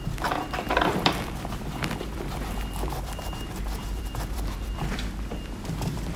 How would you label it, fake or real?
fake